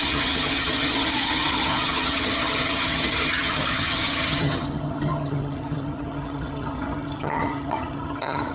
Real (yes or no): no